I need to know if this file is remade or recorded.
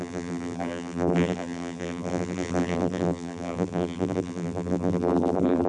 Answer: remade